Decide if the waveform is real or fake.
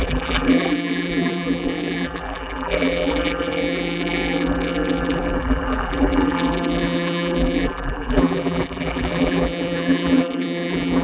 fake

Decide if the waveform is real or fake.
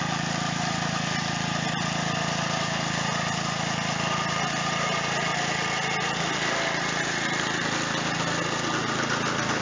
real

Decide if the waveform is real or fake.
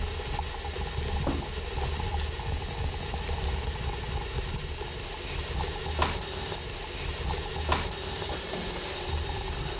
real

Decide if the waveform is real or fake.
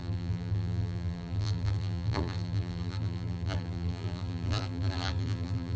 fake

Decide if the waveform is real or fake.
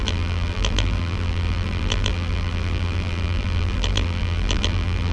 fake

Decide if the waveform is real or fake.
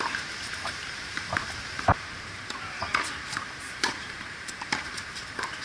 fake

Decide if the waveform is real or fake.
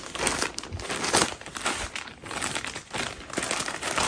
fake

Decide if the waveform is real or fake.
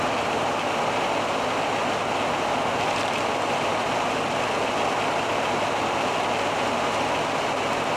real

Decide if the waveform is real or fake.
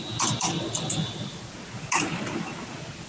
real